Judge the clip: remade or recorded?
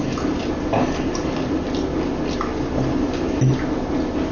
recorded